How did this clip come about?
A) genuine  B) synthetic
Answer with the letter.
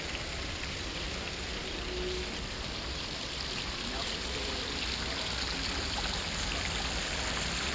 A